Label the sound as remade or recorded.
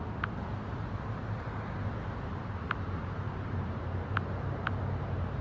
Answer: remade